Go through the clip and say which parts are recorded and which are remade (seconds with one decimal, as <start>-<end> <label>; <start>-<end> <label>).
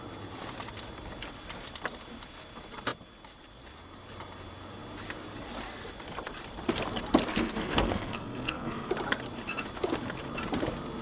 0.0-7.3 recorded; 7.3-8.9 remade; 8.9-11.0 recorded